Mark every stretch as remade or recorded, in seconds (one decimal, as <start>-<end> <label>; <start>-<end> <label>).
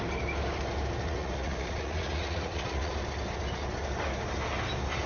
0.0-1.0 recorded; 1.0-2.9 remade; 2.9-5.1 recorded